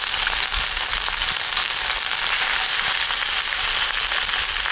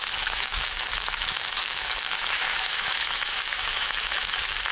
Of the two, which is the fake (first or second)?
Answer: second